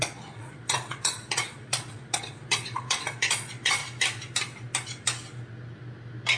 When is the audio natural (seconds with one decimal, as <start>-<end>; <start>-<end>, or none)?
3.8-6.4